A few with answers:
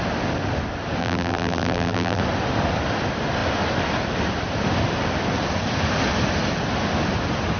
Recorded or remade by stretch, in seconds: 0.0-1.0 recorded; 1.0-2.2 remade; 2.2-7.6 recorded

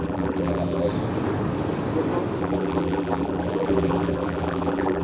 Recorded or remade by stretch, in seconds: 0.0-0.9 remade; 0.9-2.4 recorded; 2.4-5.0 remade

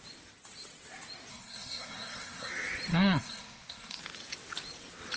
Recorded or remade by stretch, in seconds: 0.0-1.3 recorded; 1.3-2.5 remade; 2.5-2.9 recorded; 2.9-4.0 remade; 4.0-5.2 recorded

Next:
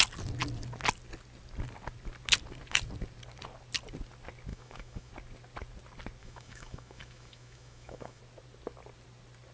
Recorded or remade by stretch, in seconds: 0.0-4.5 recorded; 4.5-5.1 remade; 5.1-6.2 recorded; 6.2-8.2 remade; 8.2-9.5 recorded

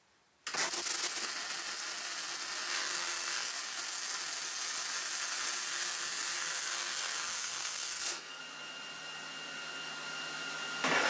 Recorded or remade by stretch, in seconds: 0.0-2.7 recorded; 2.7-3.5 remade; 3.5-5.7 recorded; 5.7-8.4 remade; 8.4-11.1 recorded

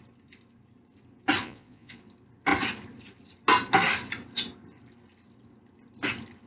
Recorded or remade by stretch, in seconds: 0.0-1.4 recorded; 1.4-2.0 remade; 2.0-6.5 recorded

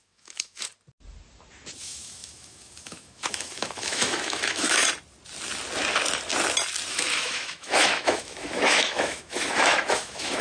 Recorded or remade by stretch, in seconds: 0.0-0.7 remade; 0.7-1.8 recorded; 1.8-4.8 remade; 4.8-6.9 recorded; 6.9-10.4 remade

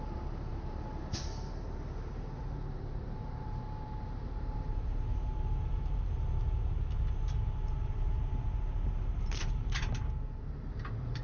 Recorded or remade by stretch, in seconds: 0.0-11.2 remade